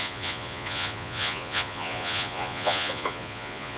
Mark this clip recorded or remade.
remade